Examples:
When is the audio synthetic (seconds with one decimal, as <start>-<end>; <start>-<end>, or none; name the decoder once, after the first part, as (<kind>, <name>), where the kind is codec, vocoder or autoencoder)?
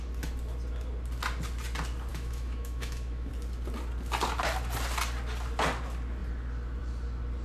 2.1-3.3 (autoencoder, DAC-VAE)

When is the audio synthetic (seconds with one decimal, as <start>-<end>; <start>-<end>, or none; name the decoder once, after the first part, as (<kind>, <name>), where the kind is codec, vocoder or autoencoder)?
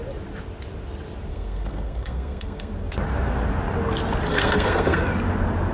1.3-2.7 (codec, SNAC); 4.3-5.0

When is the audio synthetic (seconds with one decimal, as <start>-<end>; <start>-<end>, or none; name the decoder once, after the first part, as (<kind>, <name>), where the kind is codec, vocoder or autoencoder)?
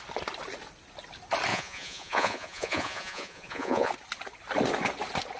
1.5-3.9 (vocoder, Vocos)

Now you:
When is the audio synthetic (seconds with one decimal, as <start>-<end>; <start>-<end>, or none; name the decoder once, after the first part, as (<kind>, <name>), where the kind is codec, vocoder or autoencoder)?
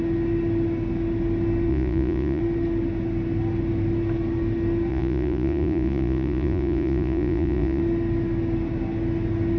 1.7-2.4 (vocoder, Vocos); 4.9-7.8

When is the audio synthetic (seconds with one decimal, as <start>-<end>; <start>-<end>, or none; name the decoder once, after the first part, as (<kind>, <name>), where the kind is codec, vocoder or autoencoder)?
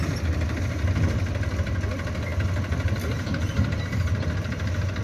none